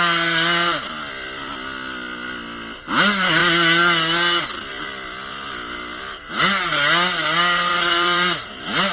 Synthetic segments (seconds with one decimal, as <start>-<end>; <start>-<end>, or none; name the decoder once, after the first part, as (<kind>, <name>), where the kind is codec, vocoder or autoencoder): 5.3-6.0 (vocoder, BigVGAN v2); 7.7-8.9